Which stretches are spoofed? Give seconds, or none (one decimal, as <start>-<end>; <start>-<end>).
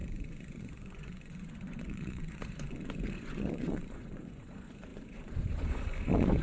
0.0-6.4